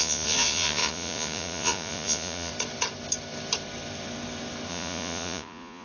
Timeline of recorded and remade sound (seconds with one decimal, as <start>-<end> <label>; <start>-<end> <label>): 0.0-2.5 remade; 2.5-4.7 recorded; 4.7-5.8 remade